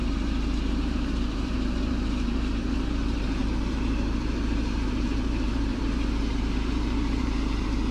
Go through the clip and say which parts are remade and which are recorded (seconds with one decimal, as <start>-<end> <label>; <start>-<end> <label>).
0.0-7.9 remade